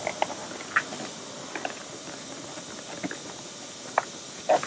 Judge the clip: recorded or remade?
recorded